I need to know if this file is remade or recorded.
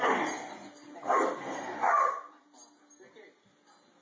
recorded